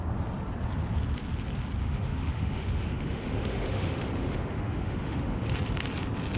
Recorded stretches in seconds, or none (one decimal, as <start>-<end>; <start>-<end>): 0.0-1.8; 5.5-6.4